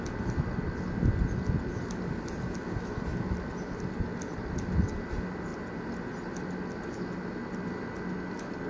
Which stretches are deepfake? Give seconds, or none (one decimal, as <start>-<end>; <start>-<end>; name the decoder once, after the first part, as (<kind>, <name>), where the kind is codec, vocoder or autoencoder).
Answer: none